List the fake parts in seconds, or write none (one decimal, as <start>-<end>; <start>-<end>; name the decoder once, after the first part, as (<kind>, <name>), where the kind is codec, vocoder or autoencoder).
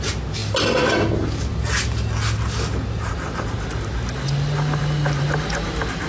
none